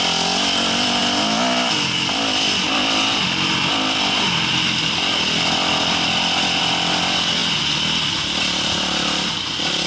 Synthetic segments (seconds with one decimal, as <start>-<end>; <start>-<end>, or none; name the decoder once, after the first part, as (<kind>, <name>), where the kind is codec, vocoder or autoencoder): none